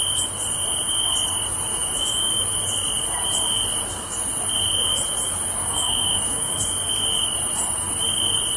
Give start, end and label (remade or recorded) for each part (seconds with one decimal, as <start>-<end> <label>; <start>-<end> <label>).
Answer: 0.0-1.7 recorded; 1.7-2.3 remade; 2.3-5.6 recorded; 5.6-6.6 remade; 6.6-8.6 recorded